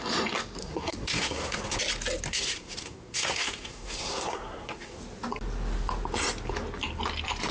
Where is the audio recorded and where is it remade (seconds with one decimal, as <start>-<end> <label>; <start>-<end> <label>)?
0.0-0.6 recorded; 0.6-1.8 remade; 1.8-2.3 recorded; 2.3-5.0 remade; 5.0-7.5 recorded